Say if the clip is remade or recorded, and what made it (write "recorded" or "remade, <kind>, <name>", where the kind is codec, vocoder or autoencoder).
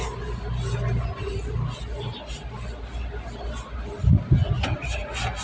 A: recorded